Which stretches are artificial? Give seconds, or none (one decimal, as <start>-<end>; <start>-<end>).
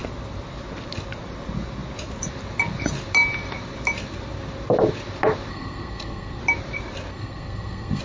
5.5-6.4; 7.1-8.0